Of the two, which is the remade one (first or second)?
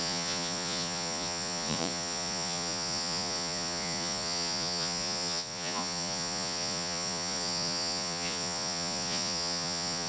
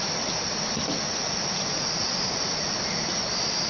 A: first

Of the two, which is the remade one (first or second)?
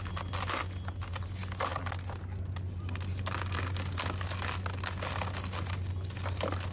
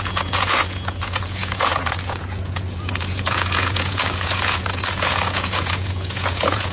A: second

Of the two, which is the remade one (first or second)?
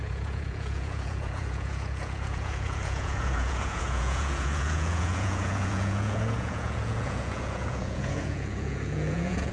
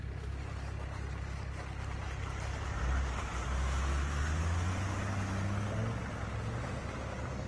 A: first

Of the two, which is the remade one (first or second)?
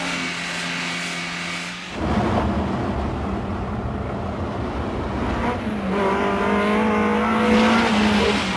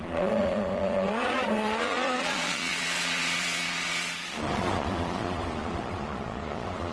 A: second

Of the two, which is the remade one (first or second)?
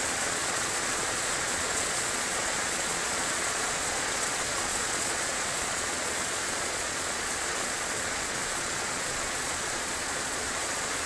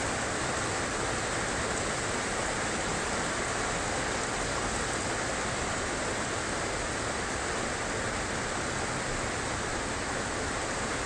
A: first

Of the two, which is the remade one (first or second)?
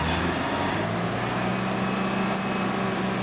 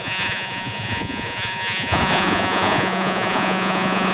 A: second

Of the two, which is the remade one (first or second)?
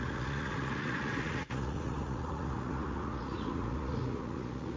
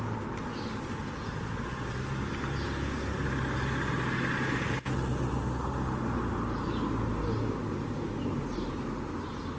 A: first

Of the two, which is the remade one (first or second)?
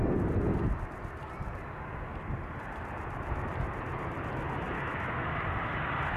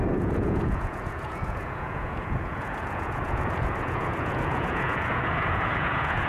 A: second